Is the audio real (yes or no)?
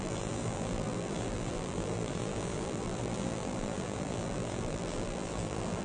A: no